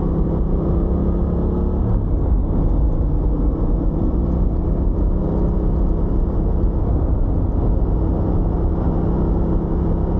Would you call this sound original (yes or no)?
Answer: yes